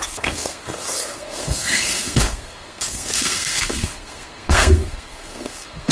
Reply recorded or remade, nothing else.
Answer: remade